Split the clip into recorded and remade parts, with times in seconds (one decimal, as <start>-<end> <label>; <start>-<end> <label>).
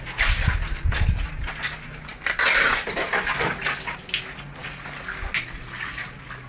0.0-6.5 recorded